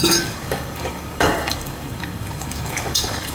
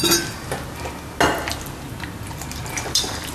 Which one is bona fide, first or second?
second